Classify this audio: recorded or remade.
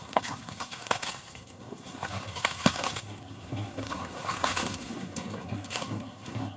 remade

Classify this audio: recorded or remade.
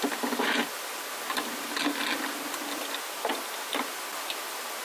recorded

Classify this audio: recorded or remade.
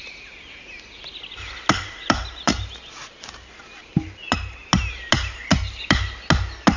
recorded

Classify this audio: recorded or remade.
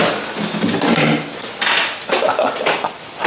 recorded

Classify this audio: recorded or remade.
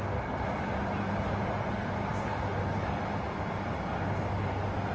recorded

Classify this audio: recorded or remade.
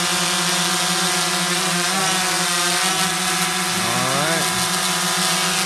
recorded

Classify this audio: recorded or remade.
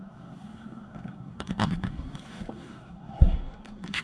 remade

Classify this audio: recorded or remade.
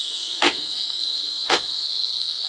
remade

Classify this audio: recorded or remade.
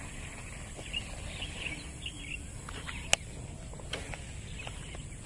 recorded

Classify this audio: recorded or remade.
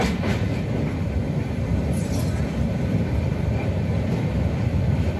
remade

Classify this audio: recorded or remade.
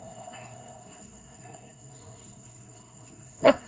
remade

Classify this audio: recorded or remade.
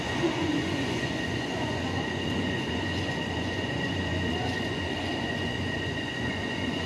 remade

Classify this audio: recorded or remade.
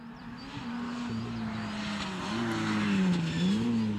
recorded